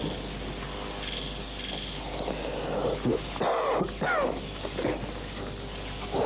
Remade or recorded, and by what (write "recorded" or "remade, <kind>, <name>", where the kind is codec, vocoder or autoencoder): recorded